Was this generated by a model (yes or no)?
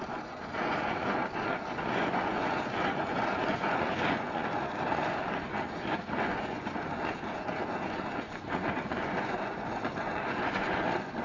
yes